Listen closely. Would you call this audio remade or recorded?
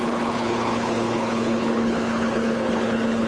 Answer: remade